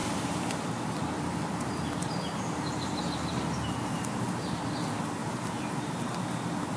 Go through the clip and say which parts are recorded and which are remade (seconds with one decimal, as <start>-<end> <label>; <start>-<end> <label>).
0.0-0.7 remade; 0.7-1.5 recorded; 1.5-3.0 remade; 3.0-5.2 recorded; 5.2-5.9 remade; 5.9-6.8 recorded